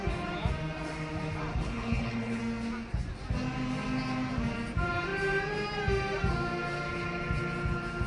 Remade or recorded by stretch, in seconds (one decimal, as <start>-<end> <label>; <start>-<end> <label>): 0.0-1.5 recorded; 1.5-2.4 remade; 2.4-8.1 recorded